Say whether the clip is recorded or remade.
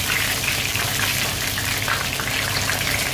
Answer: recorded